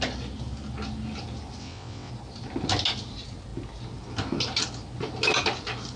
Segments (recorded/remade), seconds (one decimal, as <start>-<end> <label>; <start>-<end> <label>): 0.0-1.6 recorded; 1.6-2.1 remade; 2.1-6.0 recorded